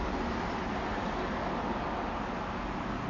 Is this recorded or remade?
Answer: recorded